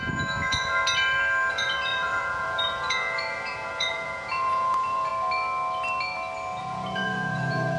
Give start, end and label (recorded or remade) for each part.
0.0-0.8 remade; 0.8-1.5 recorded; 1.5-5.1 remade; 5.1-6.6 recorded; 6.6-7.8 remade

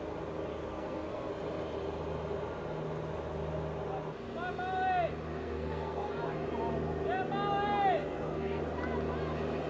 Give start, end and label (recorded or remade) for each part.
0.0-0.5 recorded; 0.5-1.3 remade; 1.3-5.3 recorded; 5.3-6.2 remade; 6.2-8.0 recorded; 8.0-8.6 remade; 8.6-9.7 recorded

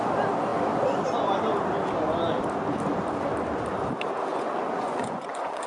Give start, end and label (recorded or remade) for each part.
0.0-4.3 recorded; 4.3-5.7 remade